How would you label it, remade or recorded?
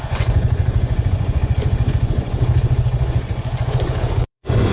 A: remade